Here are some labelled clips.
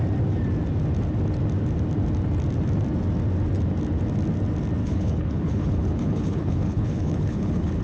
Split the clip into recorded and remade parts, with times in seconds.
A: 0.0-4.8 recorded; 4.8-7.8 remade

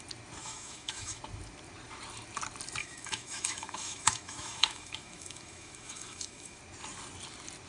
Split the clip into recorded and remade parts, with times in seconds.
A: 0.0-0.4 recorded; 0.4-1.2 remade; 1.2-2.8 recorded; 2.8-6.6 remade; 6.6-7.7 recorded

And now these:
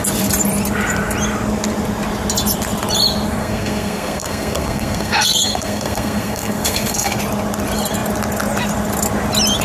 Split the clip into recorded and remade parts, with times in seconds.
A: 0.0-3.4 recorded; 3.4-7.2 remade; 7.2-9.6 recorded